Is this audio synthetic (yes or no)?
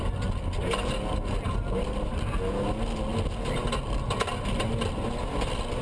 no